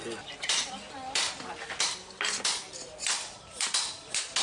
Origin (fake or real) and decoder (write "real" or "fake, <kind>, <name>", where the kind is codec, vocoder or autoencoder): real